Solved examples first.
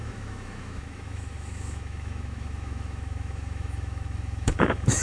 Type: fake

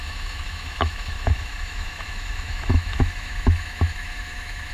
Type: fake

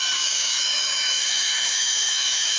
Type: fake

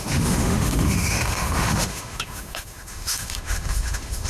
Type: fake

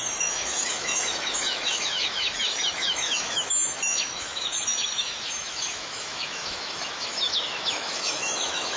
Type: fake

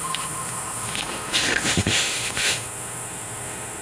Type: fake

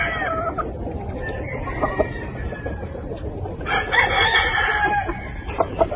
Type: real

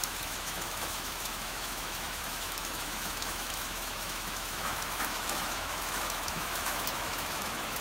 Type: fake